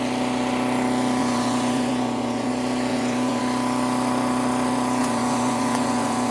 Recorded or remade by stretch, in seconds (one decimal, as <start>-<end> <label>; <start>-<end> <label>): 0.0-1.2 recorded; 1.2-2.5 remade; 2.5-2.9 recorded; 2.9-3.4 remade; 3.4-5.0 recorded; 5.0-6.3 remade